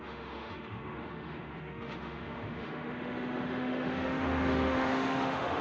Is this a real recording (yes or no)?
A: no